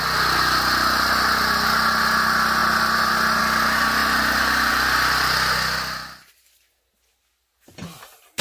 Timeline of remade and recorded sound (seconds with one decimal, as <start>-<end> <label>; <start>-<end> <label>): 0.0-8.4 recorded